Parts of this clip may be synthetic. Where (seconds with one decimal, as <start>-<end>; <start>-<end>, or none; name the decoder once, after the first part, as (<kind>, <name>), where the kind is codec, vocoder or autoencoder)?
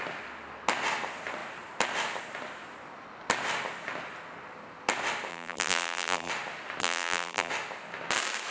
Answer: 5.3-6.3 (vocoder, BigVGAN v2); 6.8-7.5